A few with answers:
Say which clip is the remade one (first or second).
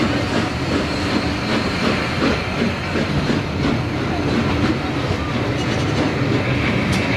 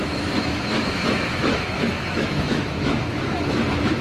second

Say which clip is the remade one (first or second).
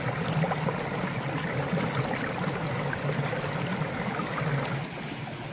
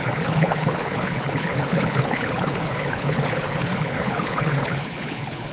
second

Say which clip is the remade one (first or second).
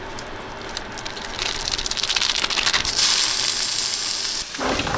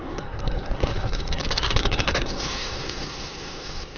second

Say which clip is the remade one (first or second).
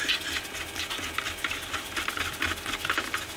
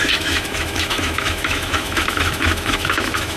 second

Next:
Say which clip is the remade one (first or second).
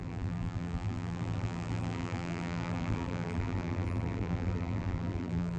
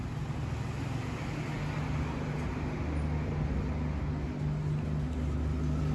first